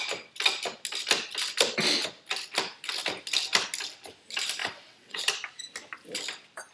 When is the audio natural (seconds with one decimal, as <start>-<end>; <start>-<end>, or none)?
0.0-4.6; 5.2-6.7